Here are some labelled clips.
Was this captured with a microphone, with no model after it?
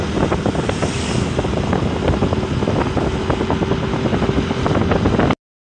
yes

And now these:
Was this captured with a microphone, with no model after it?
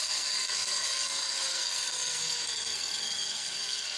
no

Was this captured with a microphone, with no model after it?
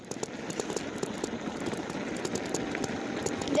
yes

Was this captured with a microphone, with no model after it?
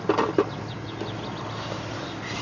yes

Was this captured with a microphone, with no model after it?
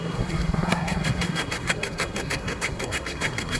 no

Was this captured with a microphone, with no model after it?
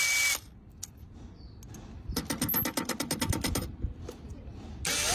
yes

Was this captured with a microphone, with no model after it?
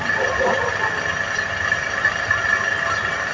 yes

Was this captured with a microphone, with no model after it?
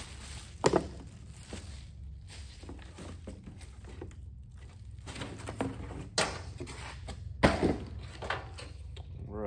yes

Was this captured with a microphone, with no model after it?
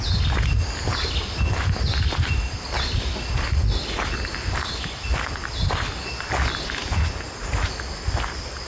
yes